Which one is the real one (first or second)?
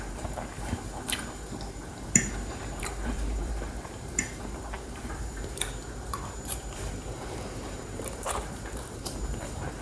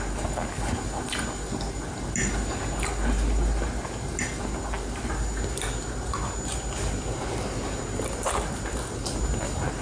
second